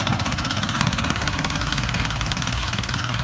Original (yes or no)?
no